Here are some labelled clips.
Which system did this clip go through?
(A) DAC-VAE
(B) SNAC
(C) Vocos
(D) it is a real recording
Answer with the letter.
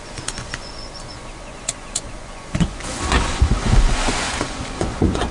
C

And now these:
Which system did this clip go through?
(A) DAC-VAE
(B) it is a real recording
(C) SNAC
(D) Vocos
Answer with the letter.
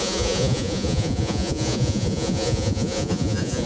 D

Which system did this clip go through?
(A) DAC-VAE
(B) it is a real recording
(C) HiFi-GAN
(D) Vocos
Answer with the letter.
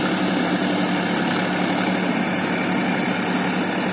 B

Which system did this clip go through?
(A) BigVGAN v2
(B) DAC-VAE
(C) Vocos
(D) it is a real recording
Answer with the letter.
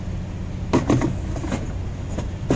D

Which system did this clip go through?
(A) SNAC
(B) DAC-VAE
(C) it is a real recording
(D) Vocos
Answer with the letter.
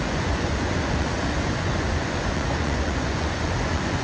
D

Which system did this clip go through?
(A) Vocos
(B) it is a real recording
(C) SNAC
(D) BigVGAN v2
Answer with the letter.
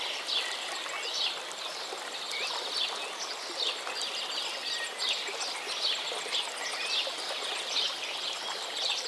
B